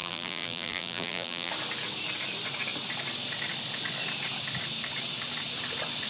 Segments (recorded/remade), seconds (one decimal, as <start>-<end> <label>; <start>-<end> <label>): 0.0-1.5 remade; 1.5-6.1 recorded